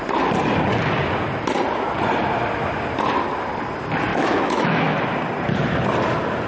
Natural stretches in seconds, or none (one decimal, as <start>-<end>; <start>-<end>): 0.0-4.1; 5.0-6.5